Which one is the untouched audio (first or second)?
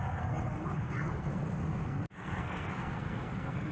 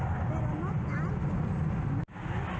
second